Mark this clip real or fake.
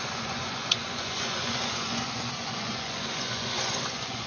fake